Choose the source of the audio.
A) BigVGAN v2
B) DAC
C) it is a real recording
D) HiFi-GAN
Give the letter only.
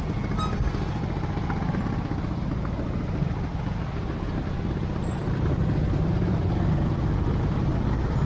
C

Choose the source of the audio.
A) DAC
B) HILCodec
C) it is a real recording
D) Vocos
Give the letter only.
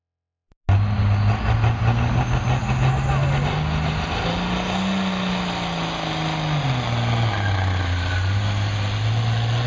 C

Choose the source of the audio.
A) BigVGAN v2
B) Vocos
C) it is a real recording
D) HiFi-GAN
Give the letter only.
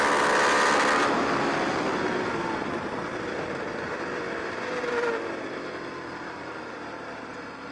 A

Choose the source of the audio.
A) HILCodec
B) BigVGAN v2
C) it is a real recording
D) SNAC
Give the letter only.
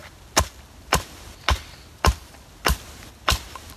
C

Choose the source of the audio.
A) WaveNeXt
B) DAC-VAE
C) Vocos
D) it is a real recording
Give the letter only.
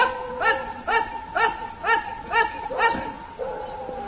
D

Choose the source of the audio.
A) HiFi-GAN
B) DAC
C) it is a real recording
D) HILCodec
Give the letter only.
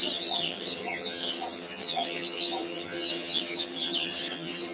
A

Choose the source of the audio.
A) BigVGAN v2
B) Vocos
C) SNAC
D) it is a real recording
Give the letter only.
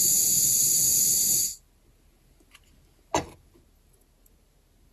D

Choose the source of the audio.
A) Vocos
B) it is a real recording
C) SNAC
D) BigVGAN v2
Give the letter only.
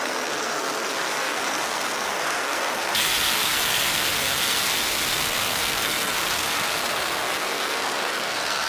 C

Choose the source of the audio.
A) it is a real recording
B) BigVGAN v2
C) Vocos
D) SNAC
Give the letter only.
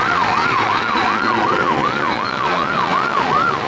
C